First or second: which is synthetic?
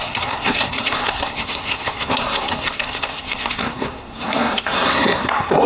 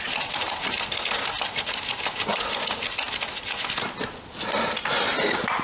first